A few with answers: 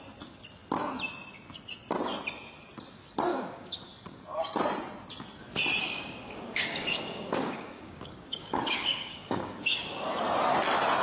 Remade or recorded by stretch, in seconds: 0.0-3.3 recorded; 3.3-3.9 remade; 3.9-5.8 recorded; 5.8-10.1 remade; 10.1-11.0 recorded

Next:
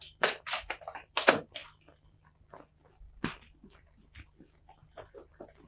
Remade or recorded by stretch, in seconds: 0.0-5.7 recorded

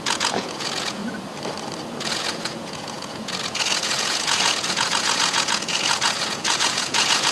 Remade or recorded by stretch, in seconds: 0.0-1.0 remade; 1.0-2.0 recorded; 2.0-7.3 remade

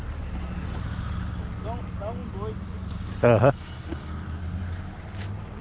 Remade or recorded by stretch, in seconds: 0.0-5.6 recorded

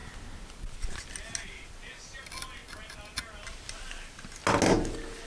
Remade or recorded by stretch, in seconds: 0.0-5.3 recorded